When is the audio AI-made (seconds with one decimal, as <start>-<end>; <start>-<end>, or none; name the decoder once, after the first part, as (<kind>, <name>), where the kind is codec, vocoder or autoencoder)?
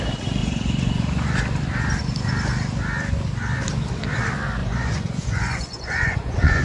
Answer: 0.4-1.3 (vocoder, Vocos); 4.6-6.6